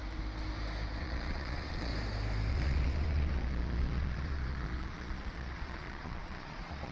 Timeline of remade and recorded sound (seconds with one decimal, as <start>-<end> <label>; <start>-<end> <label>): 0.0-1.0 recorded; 1.0-1.9 remade; 1.9-2.5 recorded; 2.5-6.9 remade